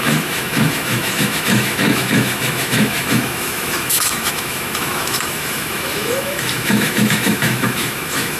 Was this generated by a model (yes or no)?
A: yes